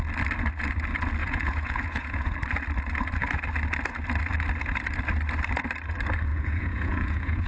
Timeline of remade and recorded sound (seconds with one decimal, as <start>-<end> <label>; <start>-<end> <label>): 0.0-1.2 recorded; 1.2-2.3 remade; 2.3-6.3 recorded; 6.3-7.5 remade